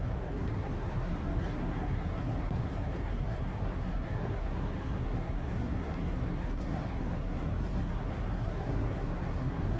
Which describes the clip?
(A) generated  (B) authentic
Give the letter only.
A